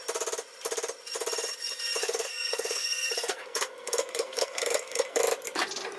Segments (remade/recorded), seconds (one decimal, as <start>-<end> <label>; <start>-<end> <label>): 0.0-2.0 recorded; 2.0-5.2 remade; 5.2-6.0 recorded